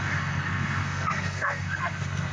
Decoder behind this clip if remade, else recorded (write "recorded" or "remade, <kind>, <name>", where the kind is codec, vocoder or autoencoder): remade, codec, SNAC